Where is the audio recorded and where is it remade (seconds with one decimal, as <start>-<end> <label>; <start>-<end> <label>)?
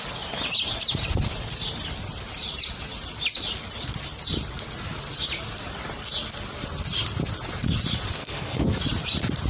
0.0-8.2 recorded; 8.2-8.8 remade; 8.8-9.5 recorded